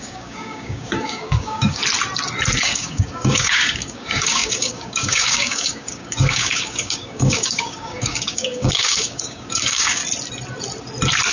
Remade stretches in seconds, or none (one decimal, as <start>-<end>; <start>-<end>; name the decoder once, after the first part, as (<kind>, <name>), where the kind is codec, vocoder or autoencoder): 0.0-1.8 (codec, DAC); 2.6-10.0